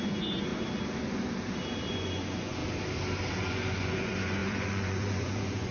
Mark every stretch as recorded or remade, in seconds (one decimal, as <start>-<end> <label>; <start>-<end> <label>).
0.0-0.5 remade; 0.5-1.9 recorded; 1.9-2.6 remade; 2.6-3.4 recorded; 3.4-5.7 remade

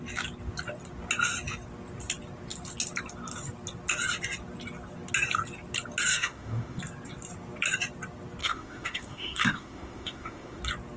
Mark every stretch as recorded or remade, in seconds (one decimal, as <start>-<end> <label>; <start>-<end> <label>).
0.0-6.1 recorded; 6.1-6.8 remade; 6.8-8.4 recorded; 8.4-10.6 remade; 10.6-11.0 recorded

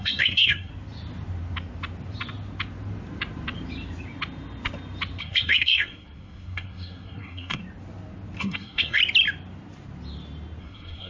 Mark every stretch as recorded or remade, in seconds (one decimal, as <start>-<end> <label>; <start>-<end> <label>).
0.0-0.7 remade; 0.7-5.2 recorded; 5.2-7.6 remade; 7.6-8.4 recorded; 8.4-9.0 remade; 9.0-10.6 recorded; 10.6-11.1 remade

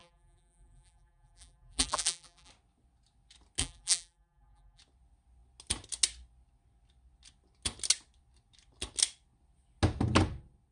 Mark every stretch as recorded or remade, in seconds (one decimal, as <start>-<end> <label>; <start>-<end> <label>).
0.0-2.5 remade; 2.5-3.6 recorded; 3.6-4.8 remade; 4.8-10.7 recorded

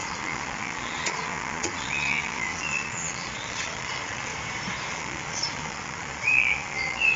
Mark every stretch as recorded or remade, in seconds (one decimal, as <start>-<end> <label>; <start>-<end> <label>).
0.0-4.3 remade; 4.3-4.9 recorded; 4.9-7.2 remade

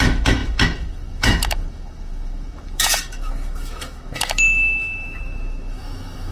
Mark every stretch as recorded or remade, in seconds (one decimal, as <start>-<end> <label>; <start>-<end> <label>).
0.0-6.3 remade

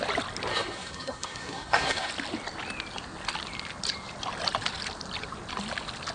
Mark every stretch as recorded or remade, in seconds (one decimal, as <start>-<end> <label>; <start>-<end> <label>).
0.0-0.5 recorded; 0.5-2.1 remade; 2.1-6.1 recorded